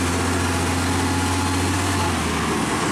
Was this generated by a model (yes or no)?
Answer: no